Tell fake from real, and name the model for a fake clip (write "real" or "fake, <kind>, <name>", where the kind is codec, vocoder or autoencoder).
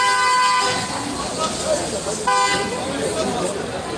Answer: real